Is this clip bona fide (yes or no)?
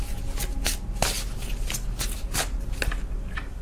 yes